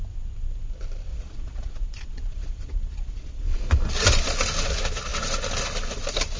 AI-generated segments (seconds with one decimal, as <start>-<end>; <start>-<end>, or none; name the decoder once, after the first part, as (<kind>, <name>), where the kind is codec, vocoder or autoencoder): 1.1-3.6 (vocoder, Vocos)